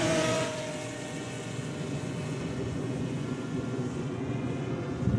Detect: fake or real fake